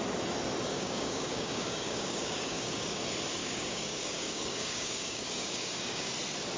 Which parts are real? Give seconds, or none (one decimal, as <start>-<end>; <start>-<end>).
0.0-0.7; 3.0-3.4; 6.1-6.6

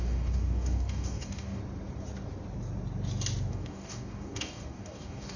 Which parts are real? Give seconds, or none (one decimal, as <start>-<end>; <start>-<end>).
1.6-3.5

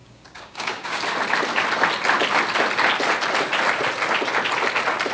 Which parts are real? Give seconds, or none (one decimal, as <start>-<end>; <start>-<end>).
1.0-5.1

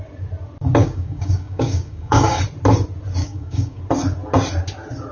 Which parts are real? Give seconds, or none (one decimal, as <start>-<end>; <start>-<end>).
0.0-0.8; 2.4-3.2; 3.8-5.1

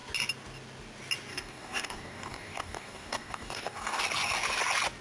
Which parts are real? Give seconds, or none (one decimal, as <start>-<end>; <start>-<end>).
0.0-1.3; 4.0-5.0

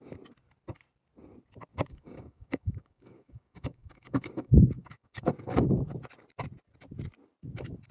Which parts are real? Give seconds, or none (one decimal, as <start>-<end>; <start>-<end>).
0.0-1.7; 5.7-7.9

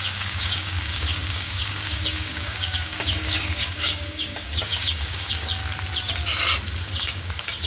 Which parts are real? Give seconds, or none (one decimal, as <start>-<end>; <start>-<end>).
5.6-6.8